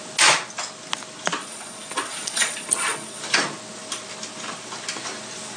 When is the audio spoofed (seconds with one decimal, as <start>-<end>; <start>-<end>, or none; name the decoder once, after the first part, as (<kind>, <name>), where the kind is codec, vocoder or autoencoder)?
1.4-3.2 (vocoder, Vocos)